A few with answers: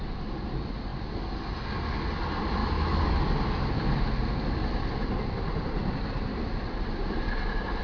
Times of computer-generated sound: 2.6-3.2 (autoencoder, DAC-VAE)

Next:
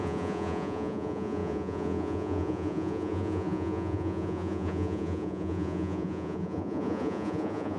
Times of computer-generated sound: 0.0-7.8 (vocoder, Vocos)